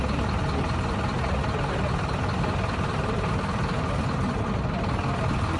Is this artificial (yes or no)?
no